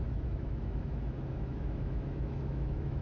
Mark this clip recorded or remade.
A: remade